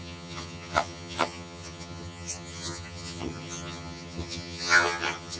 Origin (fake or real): fake